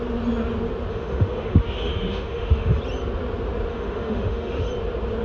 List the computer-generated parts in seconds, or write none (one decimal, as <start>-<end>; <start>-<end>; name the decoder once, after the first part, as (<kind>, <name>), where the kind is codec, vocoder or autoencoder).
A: 0.9-2.8 (autoencoder, DAC-VAE); 3.7-4.7